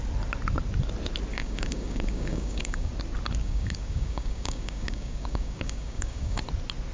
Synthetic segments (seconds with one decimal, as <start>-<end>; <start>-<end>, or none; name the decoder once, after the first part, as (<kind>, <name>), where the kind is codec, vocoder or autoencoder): 1.3-2.9 (codec, DAC); 3.4-6.4